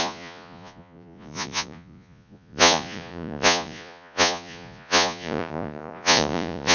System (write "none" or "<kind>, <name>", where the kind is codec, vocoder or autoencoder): vocoder, Vocos